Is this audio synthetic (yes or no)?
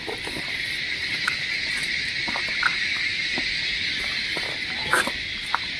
no